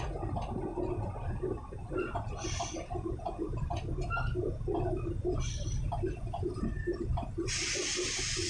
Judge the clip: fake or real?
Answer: fake